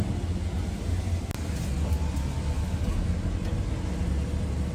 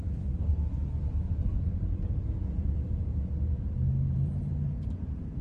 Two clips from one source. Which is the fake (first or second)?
second